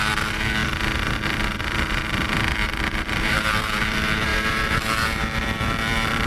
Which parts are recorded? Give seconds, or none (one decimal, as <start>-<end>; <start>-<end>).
0.6-1.6